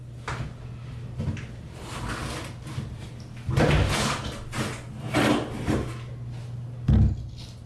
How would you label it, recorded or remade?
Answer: recorded